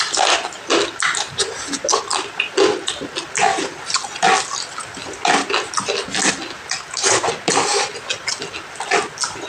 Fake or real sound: real